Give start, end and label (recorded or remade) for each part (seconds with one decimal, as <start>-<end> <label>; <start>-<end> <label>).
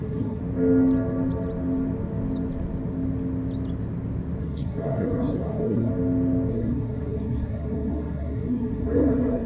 0.0-0.4 remade; 0.4-4.4 recorded; 4.4-5.9 remade; 5.9-6.5 recorded; 6.5-9.5 remade